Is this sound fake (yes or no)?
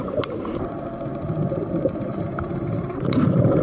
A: yes